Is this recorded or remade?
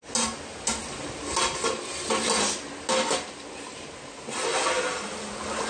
recorded